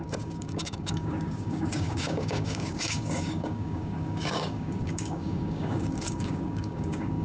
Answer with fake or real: fake